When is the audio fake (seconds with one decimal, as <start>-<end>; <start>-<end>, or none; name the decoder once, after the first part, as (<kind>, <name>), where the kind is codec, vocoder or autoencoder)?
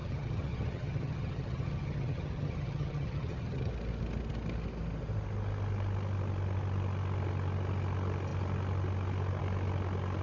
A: 0.0-3.7 (vocoder, HiFi-GAN)